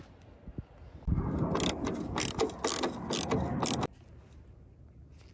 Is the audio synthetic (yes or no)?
no